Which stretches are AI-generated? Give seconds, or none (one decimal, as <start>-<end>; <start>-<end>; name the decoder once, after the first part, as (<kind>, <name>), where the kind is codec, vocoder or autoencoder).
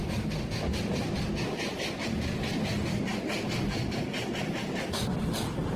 none